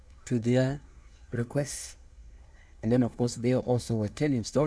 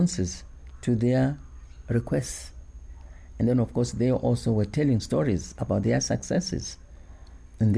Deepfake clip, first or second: first